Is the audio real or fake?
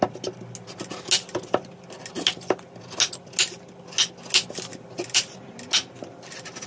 real